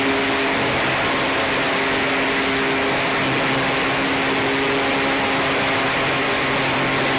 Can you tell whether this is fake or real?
real